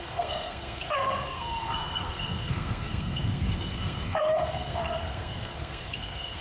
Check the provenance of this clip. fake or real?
fake